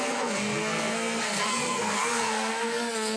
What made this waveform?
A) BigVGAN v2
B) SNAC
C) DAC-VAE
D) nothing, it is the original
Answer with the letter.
B